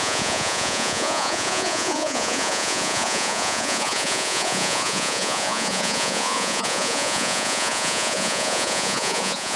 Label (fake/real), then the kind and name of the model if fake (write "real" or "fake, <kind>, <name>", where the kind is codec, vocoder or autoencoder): fake, vocoder, Vocos